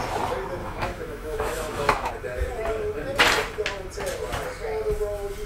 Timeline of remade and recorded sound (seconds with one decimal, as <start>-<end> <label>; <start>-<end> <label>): 0.0-0.6 recorded; 0.6-2.1 remade; 2.1-5.5 recorded

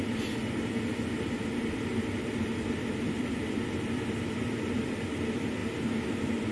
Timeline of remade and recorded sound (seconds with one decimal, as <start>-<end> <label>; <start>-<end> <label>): 0.0-6.5 recorded

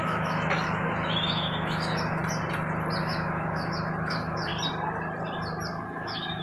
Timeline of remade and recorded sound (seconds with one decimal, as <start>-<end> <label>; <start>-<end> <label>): 0.0-2.2 remade; 2.2-3.0 recorded; 3.0-4.5 remade; 4.5-5.7 recorded; 5.7-6.4 remade